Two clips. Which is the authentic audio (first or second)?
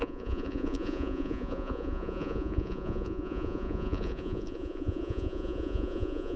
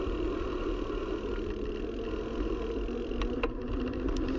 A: second